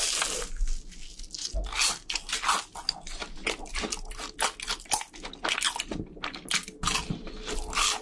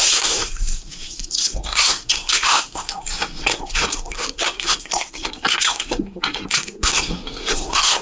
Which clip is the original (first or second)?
first